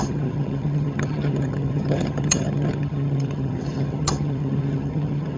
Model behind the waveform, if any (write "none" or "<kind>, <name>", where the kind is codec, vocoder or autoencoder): vocoder, HiFi-GAN